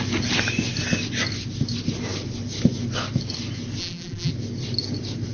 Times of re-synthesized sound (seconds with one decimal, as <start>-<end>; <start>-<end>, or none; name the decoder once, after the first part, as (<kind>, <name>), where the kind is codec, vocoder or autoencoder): 3.8-4.3 (vocoder, BigVGAN v2)